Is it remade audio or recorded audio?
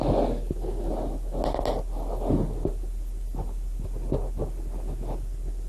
recorded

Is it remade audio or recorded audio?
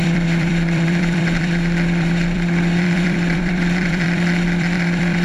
remade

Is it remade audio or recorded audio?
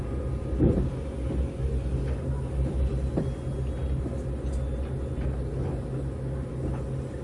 recorded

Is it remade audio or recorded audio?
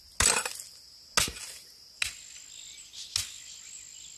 recorded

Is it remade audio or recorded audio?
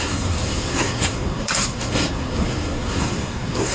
remade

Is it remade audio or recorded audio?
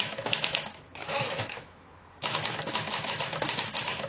remade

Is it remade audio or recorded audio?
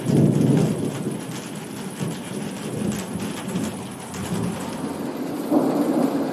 recorded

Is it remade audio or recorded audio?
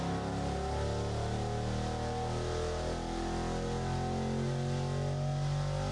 recorded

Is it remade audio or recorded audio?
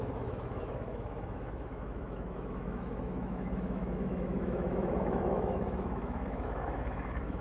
remade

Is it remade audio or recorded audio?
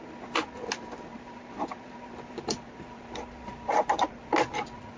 recorded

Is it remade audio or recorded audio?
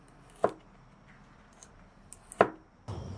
recorded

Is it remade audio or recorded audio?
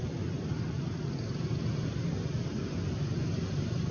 recorded